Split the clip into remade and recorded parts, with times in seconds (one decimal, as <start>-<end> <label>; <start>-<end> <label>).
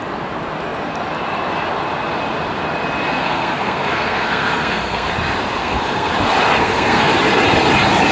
0.0-3.2 recorded; 3.2-5.1 remade; 5.1-5.6 recorded; 5.6-6.1 remade; 6.1-6.6 recorded; 6.6-7.1 remade; 7.1-8.1 recorded